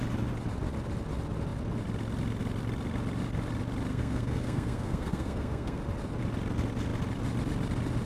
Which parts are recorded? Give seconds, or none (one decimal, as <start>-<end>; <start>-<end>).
0.0-3.9; 5.8-8.1